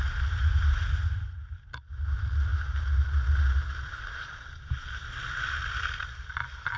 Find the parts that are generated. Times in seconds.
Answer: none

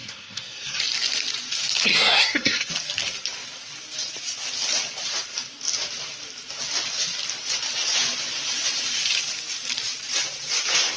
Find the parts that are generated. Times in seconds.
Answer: 0.0-0.8 (codec, SNAC); 1.9-2.7

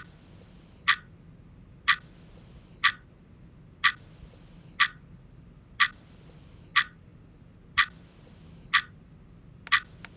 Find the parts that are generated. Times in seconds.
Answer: none

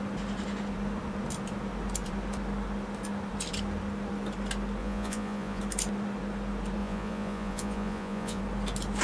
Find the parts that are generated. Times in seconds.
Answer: 4.8-5.6 (vocoder, Vocos); 6.8-8.4

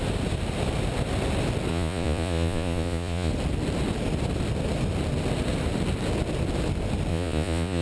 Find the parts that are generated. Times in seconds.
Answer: 1.7-3.3 (vocoder, Vocos); 7.1-7.8

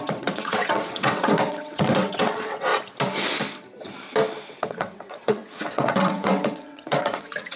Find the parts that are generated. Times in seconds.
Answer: 0.0-2.7 (vocoder, WaveNeXt); 4.5-7.6